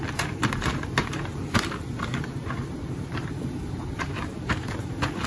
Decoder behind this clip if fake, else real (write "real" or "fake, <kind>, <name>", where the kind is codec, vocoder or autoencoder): fake, vocoder, BigVGAN v2